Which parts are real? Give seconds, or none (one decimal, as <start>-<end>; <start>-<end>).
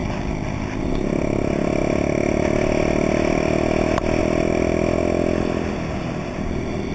0.0-6.9